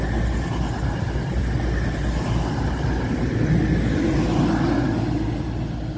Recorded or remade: recorded